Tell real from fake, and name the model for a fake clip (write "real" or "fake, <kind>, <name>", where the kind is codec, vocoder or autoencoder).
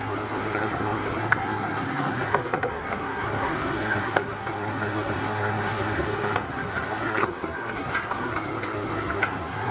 fake, codec, SNAC